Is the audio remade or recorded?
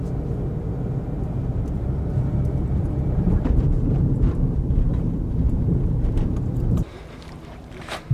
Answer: remade